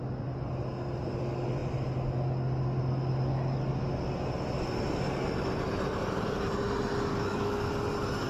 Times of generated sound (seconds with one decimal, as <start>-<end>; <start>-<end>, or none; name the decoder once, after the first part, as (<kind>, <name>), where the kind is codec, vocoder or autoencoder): 7.1-7.7 (codec, DAC)